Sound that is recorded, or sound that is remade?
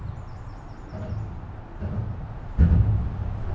recorded